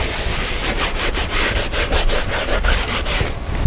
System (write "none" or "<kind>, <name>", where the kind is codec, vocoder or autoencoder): none